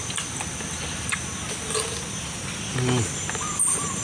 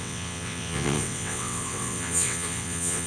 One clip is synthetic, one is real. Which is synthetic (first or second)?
second